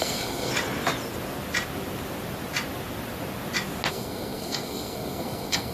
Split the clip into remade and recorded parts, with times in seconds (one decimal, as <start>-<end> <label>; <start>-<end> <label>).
0.0-0.5 remade; 0.5-3.9 recorded; 3.9-5.7 remade